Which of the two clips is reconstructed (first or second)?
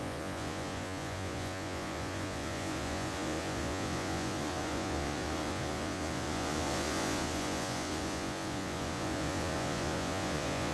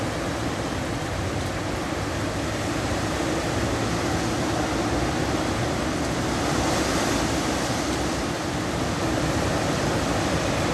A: first